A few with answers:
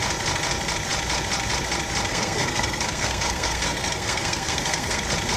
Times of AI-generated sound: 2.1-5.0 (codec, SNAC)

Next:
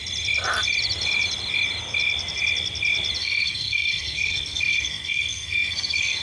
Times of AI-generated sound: 3.2-6.2 (codec, SNAC)

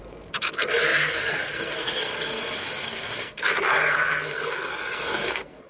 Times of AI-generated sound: 0.0-5.7 (codec, SNAC)

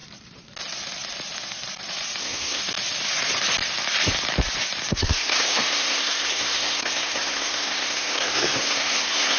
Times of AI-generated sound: 2.2-2.6 (codec, SNAC); 4.9-9.4

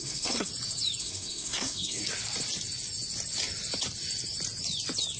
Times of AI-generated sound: 0.0-0.5 (codec, SNAC); 1.0-2.0

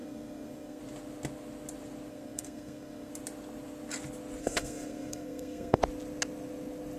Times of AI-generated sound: 0.0-0.8 (codec, SNAC); 2.1-3.1; 4.4-5.8